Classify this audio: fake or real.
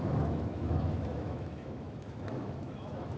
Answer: fake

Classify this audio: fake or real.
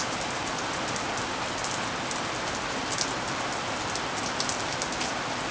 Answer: real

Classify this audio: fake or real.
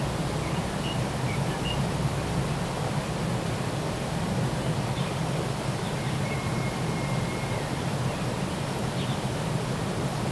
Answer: real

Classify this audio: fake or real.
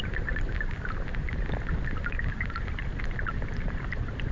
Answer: real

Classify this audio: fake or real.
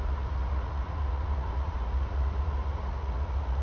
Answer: fake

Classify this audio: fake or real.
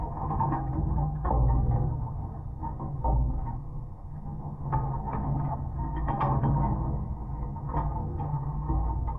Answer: fake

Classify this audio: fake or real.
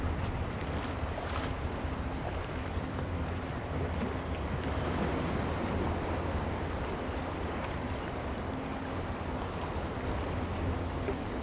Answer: real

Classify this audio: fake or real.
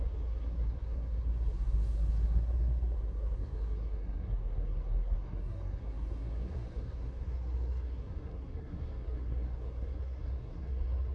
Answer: fake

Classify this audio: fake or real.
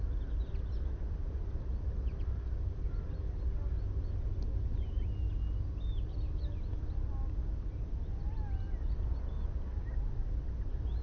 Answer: real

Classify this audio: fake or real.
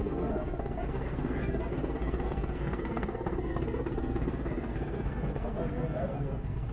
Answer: fake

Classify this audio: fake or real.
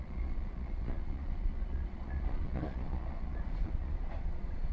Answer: fake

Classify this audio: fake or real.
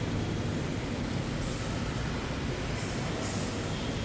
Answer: real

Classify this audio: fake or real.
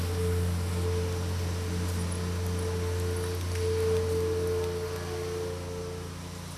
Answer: real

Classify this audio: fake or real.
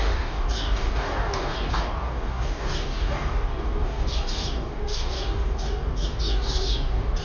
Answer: fake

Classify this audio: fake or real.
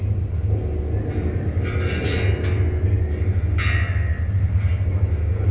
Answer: real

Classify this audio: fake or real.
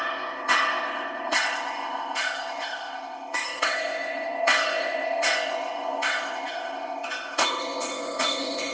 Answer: fake